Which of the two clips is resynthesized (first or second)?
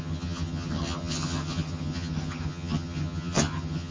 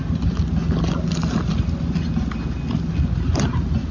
first